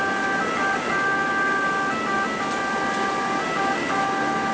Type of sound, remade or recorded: recorded